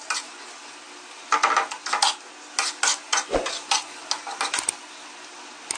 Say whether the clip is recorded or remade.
recorded